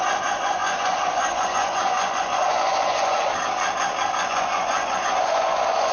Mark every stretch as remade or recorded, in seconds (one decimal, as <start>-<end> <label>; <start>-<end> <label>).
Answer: 0.0-3.3 remade; 3.3-4.2 recorded; 4.2-5.9 remade